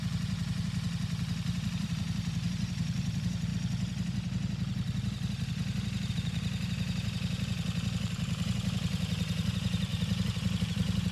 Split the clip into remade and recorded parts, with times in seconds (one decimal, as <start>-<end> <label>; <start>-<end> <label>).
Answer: 0.0-3.5 remade; 3.5-6.1 recorded; 6.1-9.9 remade; 9.9-10.6 recorded; 10.6-11.1 remade